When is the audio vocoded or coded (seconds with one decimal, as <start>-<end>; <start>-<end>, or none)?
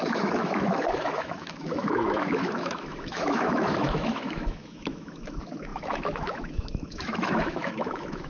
0.0-8.3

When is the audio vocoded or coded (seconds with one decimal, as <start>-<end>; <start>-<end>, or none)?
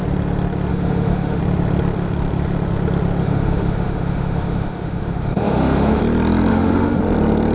0.7-1.4; 3.2-6.0; 6.5-7.0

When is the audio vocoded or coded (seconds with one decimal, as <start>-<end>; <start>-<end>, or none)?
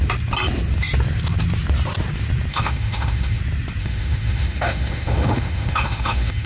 2.5-3.4; 3.8-6.5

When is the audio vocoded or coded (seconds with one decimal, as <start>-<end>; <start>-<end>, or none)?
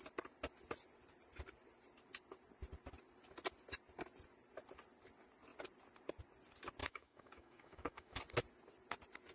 6.8-8.2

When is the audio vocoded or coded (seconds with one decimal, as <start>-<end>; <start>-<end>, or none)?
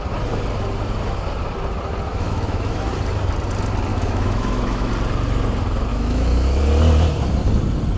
2.1-2.9; 3.9-4.9; 5.9-6.6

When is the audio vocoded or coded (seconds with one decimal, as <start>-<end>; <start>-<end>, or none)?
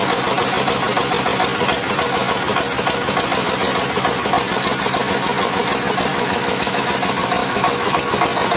6.1-6.8; 7.4-8.0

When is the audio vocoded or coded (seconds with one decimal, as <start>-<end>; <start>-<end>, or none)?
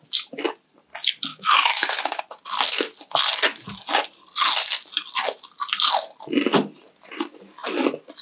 1.3-2.2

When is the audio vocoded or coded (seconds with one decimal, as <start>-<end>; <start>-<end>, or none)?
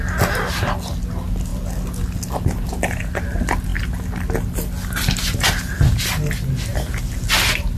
none